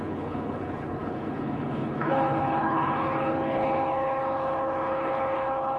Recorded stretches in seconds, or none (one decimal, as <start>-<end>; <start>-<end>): none